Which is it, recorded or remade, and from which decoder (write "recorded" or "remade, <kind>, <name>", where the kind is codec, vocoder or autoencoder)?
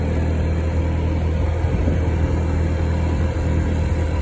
recorded